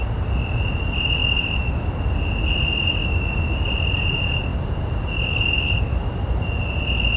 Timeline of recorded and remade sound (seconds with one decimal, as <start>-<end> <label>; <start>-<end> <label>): 0.0-7.2 recorded